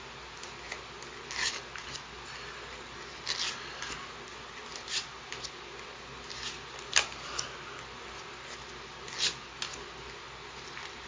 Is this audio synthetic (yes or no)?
no